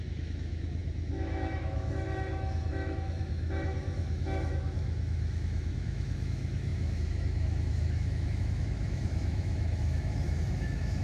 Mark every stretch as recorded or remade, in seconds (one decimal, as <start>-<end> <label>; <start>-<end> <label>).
0.0-11.0 remade